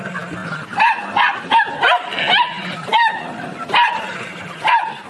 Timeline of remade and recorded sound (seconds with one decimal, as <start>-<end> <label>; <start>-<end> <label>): 0.0-5.1 recorded